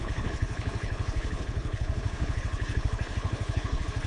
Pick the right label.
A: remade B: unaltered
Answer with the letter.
A